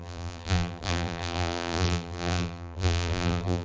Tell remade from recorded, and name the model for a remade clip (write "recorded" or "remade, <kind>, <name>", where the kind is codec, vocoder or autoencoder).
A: remade, vocoder, BigVGAN v2